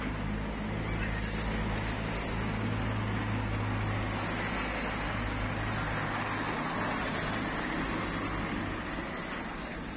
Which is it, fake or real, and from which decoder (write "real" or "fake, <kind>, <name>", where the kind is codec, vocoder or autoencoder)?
real